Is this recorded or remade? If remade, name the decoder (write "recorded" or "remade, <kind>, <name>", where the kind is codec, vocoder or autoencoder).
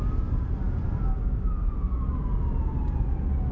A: recorded